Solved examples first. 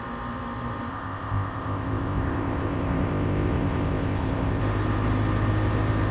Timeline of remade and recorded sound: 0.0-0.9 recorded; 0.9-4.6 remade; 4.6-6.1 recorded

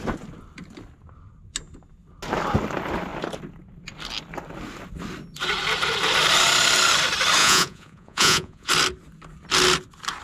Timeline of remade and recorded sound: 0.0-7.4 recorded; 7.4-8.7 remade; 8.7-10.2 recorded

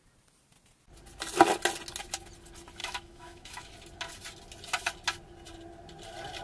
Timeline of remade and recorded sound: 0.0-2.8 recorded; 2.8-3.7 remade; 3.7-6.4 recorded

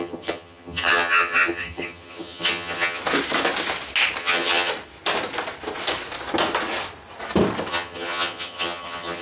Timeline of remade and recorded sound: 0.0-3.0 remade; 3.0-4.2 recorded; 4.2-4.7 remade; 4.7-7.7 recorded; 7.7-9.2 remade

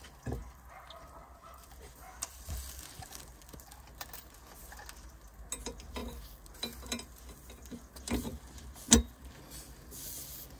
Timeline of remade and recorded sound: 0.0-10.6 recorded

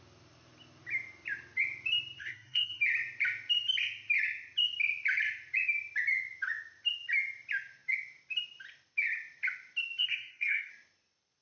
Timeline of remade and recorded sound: 0.0-2.2 recorded; 2.2-2.8 remade; 2.8-10.0 recorded; 10.0-10.7 remade; 10.7-11.4 recorded

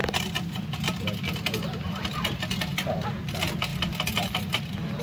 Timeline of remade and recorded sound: 0.0-3.0 remade; 3.0-3.7 recorded; 3.7-5.0 remade